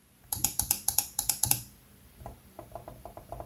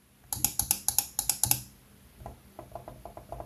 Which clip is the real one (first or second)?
second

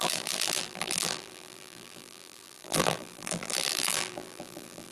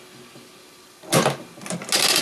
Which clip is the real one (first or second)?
second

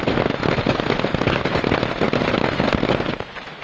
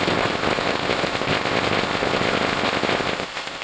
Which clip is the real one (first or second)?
first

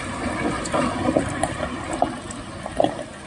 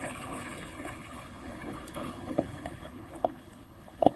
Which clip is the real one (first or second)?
first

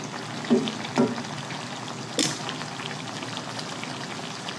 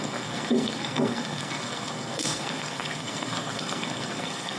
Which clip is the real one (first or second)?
first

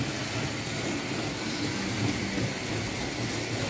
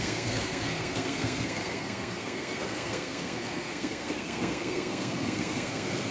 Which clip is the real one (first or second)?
first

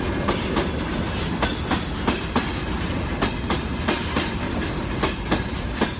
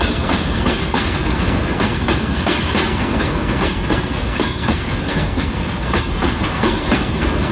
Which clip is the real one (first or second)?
first